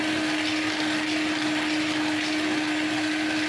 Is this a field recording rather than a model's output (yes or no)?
yes